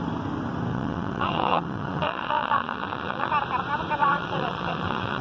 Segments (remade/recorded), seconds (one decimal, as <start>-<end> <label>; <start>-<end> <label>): 0.0-0.7 recorded; 0.7-3.3 remade; 3.3-4.0 recorded; 4.0-5.2 remade